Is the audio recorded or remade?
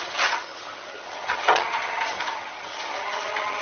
remade